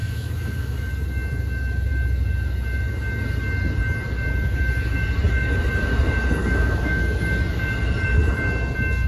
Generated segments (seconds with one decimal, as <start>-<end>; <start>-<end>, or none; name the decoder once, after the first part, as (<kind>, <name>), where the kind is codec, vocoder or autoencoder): 0.0-0.9 (autoencoder, DAC-VAE); 6.4-7.0